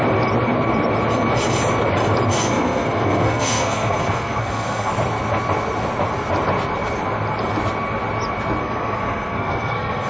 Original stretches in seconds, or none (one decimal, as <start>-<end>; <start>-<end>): 0.0-2.3; 4.9-8.6